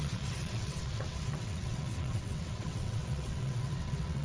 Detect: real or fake fake